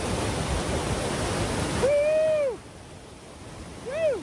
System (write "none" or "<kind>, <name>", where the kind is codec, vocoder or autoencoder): none